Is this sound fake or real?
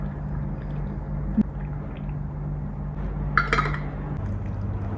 real